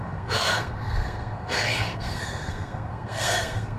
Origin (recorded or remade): remade